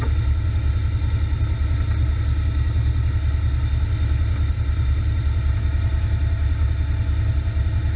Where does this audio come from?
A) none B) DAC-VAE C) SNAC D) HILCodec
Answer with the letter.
A